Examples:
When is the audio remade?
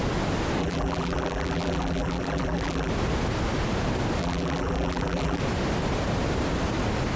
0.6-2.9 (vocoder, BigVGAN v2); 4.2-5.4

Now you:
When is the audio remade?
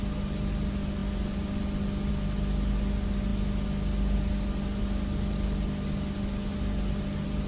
none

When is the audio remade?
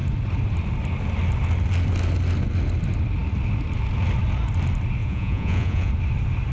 5.0-5.9 (vocoder, Vocos)